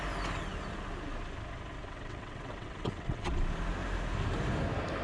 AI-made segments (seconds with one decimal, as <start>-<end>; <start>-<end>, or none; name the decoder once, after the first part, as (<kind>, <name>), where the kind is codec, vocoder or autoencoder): 1.8-3.3 (vocoder, WaveNeXt)